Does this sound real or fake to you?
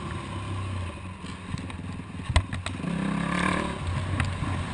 real